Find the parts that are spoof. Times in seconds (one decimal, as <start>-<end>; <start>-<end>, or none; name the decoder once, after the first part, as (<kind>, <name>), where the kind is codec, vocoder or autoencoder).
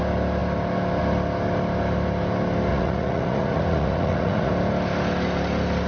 2.7-4.5 (vocoder, Vocos)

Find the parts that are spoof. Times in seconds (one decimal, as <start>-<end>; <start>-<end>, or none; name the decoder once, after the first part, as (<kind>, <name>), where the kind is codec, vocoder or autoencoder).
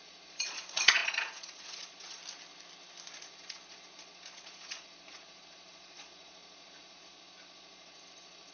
0.0-2.2 (vocoder, Vocos); 3.1-8.5